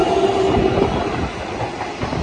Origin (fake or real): real